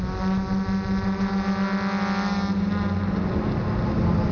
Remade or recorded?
recorded